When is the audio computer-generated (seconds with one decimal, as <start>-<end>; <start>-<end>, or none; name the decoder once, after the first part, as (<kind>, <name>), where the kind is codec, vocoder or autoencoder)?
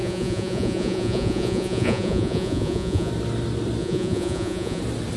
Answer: 0.0-3.1 (vocoder, Vocos); 3.8-4.8